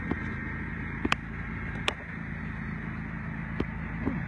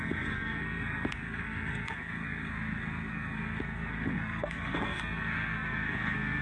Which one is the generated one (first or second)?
second